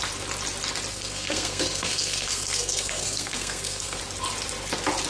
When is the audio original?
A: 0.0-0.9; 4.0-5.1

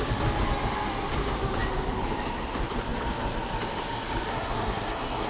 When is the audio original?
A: 0.0-4.3

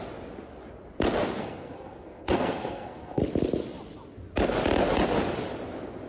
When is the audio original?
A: 0.0-1.4; 3.2-6.1

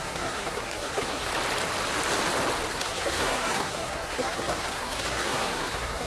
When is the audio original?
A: 1.3-2.7

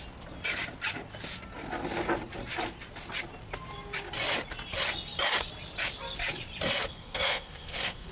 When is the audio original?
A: 0.0-6.9